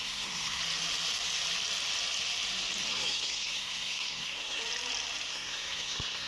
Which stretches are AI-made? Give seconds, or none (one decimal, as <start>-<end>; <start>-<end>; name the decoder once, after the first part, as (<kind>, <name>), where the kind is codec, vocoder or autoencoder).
0.0-0.6 (codec, SNAC); 2.9-4.6; 5.3-6.3